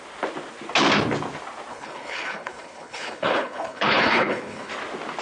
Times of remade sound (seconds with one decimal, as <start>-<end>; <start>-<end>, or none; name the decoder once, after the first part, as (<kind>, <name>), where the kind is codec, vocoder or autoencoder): 1.7-4.7 (codec, HILCodec)